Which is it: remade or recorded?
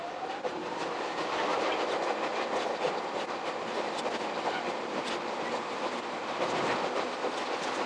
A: remade